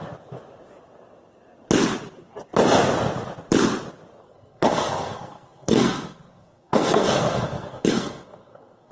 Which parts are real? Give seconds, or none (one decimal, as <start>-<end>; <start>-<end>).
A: 0.0-4.2